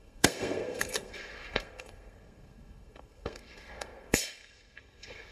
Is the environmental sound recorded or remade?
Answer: remade